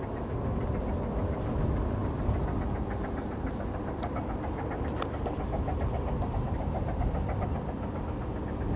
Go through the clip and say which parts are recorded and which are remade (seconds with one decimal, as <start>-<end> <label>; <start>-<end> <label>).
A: 0.0-8.8 recorded